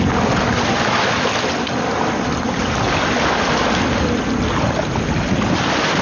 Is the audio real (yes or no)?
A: yes